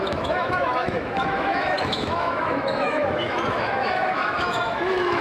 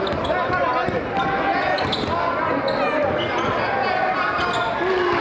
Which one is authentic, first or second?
second